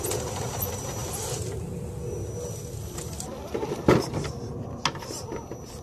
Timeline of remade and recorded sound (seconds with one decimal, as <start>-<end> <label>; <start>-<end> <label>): 0.0-5.8 recorded